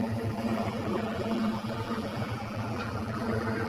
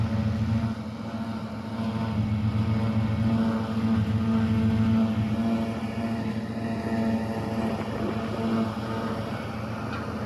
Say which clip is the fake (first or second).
first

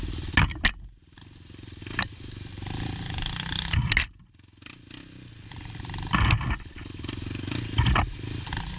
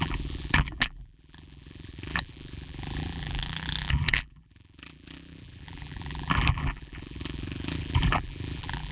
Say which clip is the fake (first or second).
second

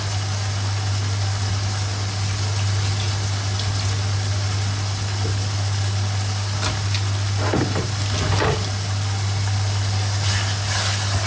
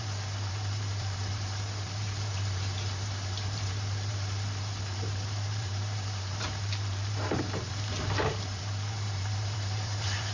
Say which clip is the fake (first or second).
second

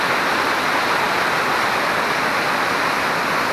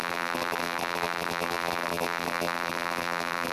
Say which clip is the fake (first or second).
second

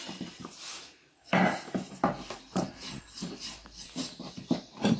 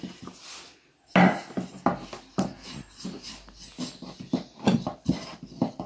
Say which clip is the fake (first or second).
first